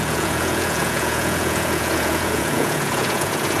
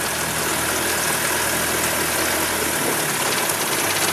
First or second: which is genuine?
second